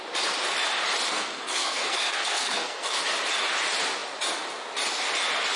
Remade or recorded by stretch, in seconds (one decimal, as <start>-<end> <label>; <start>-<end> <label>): 0.0-1.1 recorded; 1.1-3.0 remade; 3.0-5.6 recorded